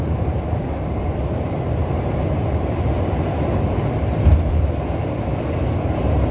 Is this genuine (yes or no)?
no